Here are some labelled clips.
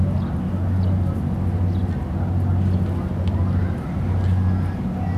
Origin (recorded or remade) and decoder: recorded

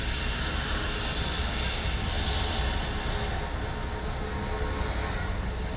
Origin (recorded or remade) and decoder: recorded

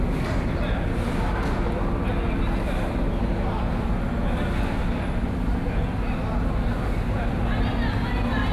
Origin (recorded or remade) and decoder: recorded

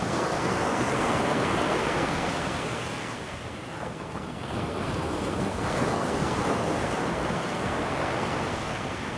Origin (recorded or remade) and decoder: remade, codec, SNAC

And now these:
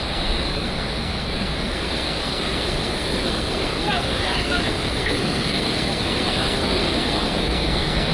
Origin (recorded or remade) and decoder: remade, codec, SNAC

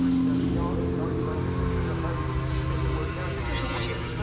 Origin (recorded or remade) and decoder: recorded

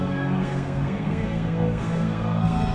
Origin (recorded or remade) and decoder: remade, codec, SNAC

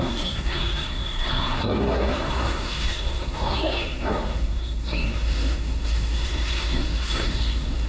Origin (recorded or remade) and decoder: remade, codec, SNAC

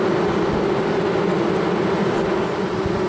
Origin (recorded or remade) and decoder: recorded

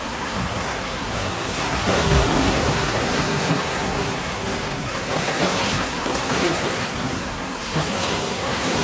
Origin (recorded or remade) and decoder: remade, codec, SNAC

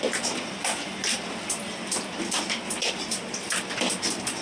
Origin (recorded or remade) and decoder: recorded